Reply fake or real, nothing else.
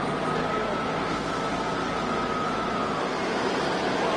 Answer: real